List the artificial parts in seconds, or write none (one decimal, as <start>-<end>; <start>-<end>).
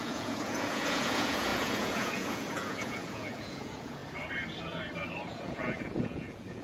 0.0-4.0; 5.3-6.6